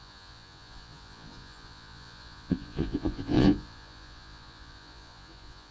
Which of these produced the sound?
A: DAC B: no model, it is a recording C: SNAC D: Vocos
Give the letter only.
D